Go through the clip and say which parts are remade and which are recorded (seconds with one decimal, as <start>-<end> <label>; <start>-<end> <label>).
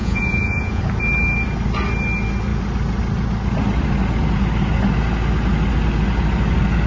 0.0-0.8 remade; 0.8-6.9 recorded